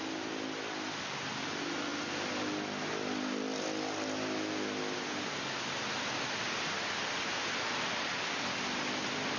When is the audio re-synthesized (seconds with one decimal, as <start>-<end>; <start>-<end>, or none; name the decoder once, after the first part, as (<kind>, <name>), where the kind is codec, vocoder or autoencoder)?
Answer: none